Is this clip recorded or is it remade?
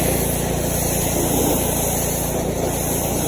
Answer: recorded